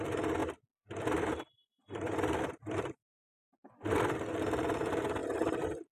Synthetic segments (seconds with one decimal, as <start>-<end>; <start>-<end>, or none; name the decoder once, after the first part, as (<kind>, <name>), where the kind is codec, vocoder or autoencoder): none